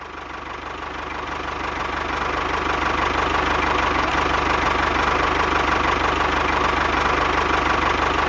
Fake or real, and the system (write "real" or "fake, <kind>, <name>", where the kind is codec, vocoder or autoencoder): real